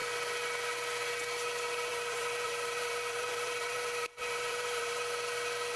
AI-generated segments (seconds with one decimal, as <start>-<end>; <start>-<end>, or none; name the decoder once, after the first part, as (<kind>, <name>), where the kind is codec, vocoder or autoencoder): 1.9-5.0 (vocoder, BigVGAN v2)